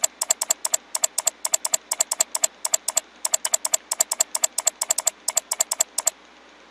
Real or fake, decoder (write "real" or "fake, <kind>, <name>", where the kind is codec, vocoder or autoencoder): real